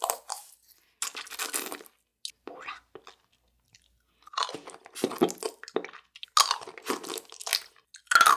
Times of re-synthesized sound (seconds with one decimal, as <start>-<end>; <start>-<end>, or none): none